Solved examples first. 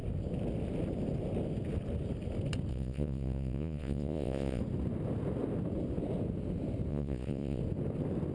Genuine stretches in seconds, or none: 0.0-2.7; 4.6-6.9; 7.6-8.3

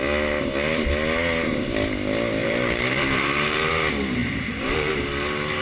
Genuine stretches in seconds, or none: 0.0-2.4; 3.7-4.2; 4.9-5.6